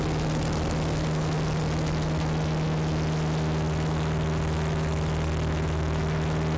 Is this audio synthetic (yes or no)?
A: no